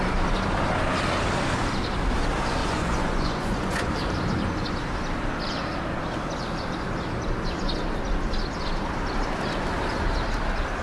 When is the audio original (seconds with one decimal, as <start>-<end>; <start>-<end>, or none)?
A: 0.0-2.6; 3.9-10.8

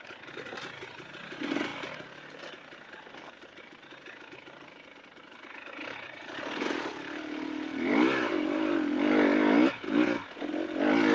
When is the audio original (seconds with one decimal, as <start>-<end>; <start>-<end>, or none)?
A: 0.0-11.1

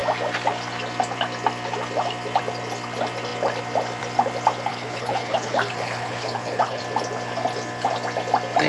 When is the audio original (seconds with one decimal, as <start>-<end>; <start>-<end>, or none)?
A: 0.0-4.7; 6.8-8.7

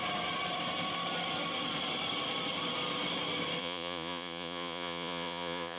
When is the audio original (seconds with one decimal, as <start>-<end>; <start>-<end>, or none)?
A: 0.0-3.6